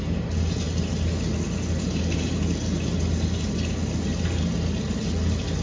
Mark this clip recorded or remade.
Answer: recorded